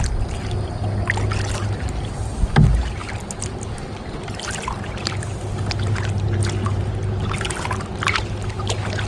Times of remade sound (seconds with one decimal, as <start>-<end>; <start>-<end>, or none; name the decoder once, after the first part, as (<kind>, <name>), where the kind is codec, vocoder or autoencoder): none